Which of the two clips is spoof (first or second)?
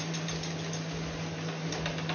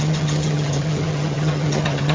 second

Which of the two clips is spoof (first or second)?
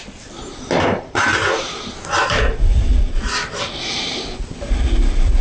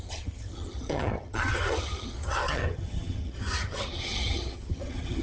second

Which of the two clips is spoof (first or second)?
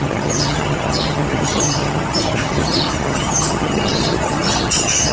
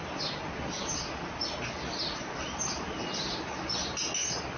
first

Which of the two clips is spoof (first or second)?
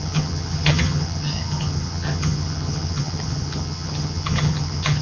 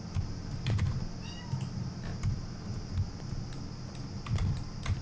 first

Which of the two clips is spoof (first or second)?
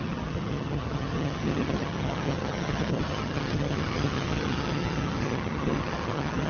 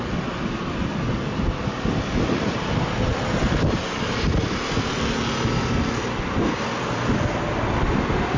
first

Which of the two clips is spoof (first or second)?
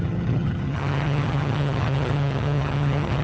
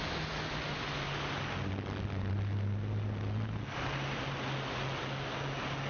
first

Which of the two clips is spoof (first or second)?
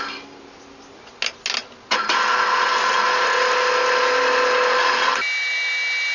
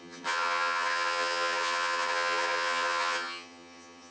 second